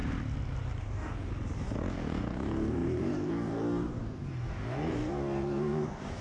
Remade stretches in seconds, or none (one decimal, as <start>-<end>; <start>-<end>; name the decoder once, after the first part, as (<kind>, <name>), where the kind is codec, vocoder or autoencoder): 0.8-1.3 (codec, DAC); 1.9-6.2

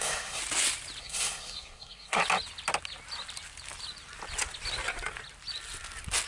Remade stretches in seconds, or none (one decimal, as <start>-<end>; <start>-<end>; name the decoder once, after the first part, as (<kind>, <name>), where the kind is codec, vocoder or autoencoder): 0.0-0.4 (codec, SNAC); 1.0-2.2

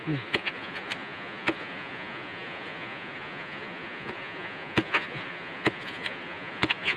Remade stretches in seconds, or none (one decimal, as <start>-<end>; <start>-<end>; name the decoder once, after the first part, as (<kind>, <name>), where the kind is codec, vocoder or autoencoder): 0.0-7.0 (vocoder, Vocos)

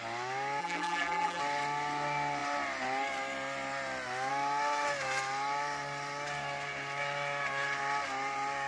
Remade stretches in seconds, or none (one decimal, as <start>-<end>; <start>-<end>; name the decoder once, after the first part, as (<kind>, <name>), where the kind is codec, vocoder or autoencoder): 0.6-1.4 (vocoder, BigVGAN v2)

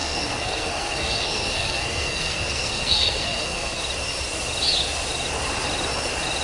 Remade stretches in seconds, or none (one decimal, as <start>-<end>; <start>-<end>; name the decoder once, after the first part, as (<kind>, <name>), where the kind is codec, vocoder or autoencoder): 0.0-3.8 (codec, SNAC)

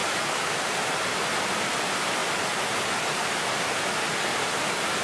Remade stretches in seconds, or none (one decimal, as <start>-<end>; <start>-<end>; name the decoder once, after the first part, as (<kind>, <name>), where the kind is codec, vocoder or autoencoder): none